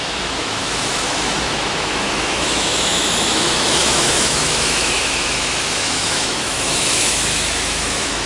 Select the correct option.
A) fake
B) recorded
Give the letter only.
A